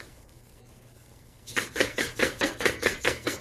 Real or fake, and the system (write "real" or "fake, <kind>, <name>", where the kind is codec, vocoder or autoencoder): fake, codec, SNAC